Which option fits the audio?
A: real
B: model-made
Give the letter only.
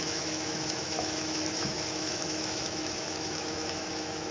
B